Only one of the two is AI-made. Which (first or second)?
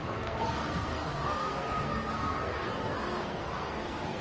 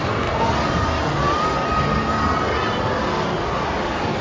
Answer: first